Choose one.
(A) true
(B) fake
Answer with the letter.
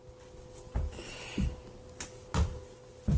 A